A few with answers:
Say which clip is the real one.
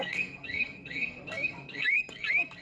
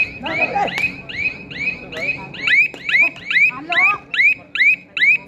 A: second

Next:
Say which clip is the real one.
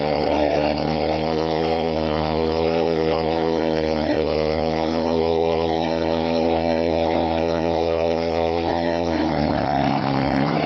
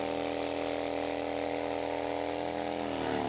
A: second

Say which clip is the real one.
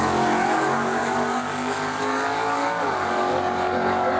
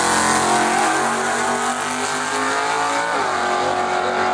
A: second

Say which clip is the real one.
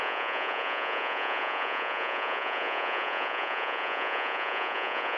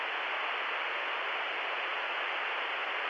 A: second